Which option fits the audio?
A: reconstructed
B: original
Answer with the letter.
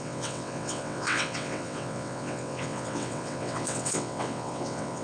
A